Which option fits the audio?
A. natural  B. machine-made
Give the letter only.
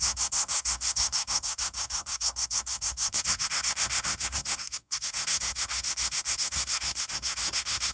B